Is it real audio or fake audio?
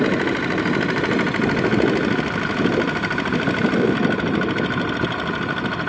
real